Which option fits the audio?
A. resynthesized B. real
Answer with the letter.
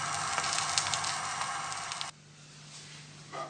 B